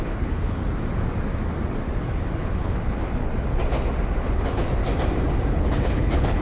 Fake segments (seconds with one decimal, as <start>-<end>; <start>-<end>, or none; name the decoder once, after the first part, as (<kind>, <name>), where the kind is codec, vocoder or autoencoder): 0.0-0.6 (codec, HILCodec); 2.0-3.3; 4.2-4.8; 5.5-6.4